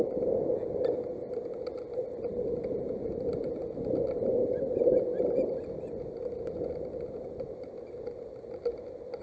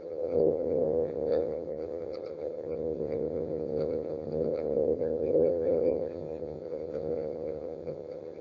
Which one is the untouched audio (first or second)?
first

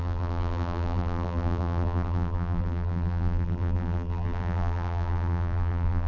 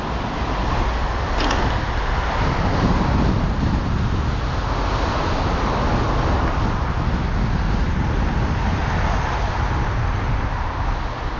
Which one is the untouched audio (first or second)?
second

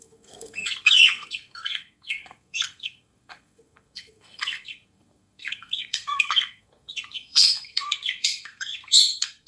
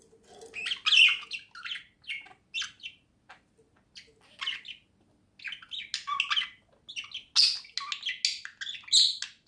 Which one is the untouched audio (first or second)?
second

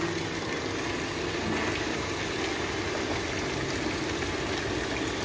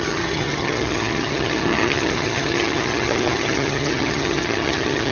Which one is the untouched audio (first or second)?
first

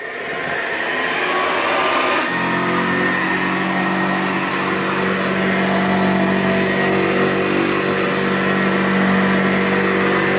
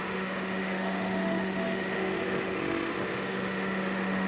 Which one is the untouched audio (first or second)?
first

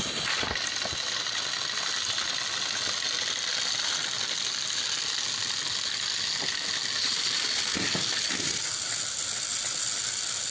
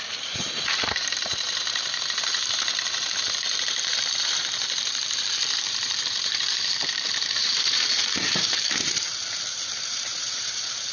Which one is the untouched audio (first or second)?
first